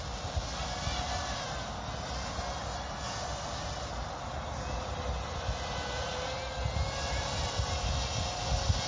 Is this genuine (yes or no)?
yes